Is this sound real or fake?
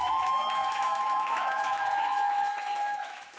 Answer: fake